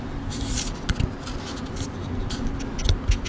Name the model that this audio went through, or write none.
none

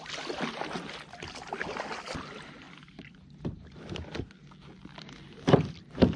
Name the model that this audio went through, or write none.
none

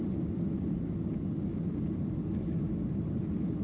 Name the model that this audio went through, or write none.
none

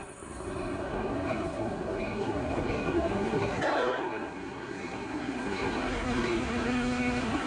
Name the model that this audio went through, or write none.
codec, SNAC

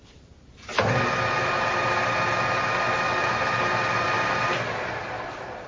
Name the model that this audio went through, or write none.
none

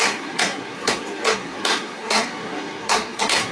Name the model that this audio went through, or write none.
codec, SNAC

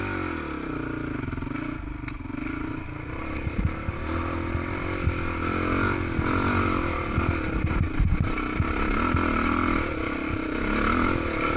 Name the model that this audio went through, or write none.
none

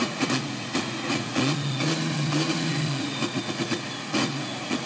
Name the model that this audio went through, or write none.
vocoder, Vocos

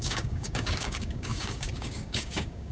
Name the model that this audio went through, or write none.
codec, DAC